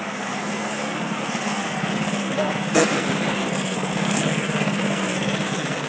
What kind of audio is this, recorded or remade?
remade